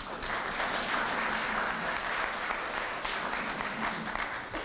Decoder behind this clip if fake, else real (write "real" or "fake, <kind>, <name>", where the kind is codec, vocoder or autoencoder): real